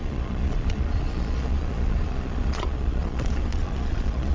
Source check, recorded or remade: remade